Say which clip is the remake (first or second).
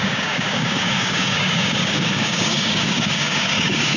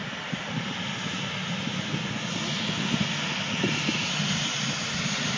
first